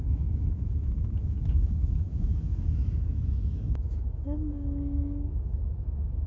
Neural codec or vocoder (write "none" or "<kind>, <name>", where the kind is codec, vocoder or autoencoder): autoencoder, DAC-VAE